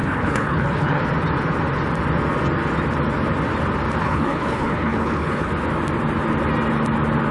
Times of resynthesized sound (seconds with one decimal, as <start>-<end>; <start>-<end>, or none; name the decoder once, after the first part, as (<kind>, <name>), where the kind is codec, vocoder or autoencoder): 0.0-1.0 (codec, HILCodec); 4.0-5.5